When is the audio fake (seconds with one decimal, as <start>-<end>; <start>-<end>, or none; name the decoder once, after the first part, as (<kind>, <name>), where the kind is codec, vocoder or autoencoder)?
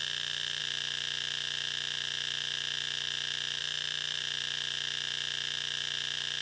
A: none